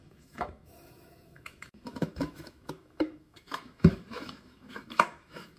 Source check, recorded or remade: remade